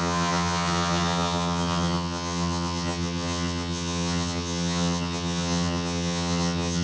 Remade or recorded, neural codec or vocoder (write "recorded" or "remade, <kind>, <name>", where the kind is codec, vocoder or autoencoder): remade, vocoder, HiFi-GAN